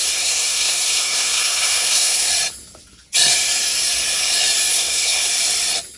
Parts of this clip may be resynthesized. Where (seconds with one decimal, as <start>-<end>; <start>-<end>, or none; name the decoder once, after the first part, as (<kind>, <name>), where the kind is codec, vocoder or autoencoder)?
0.0-2.3 (codec, SNAC); 4.7-5.3